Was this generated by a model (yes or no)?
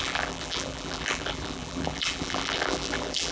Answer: yes